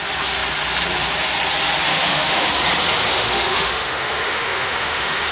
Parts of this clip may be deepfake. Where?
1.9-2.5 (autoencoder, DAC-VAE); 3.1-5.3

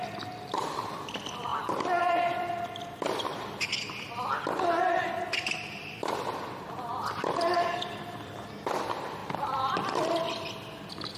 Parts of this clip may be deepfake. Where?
none

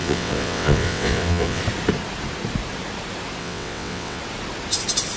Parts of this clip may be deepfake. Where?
0.0-1.6 (vocoder, WaveNeXt); 3.4-4.2

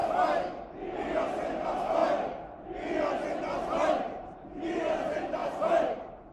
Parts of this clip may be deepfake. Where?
0.8-2.0 (vocoder, BigVGAN v2); 3.4-6.3

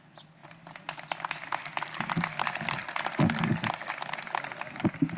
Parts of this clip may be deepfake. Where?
none

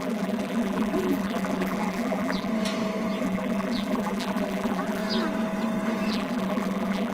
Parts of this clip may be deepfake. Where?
0.0-2.5 (vocoder, BigVGAN v2); 3.2-5.0; 6.1-7.1

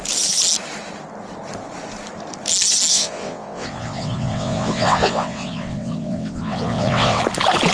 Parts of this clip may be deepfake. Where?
2.9-7.2 (vocoder, WaveNeXt)